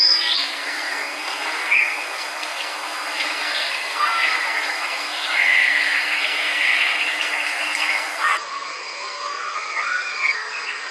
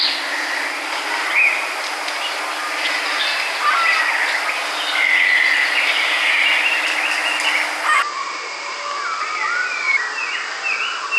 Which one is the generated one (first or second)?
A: first